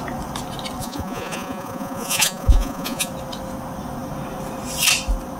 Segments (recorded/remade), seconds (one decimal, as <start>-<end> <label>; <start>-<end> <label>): 0.0-0.8 recorded; 0.8-3.1 remade; 3.1-5.4 recorded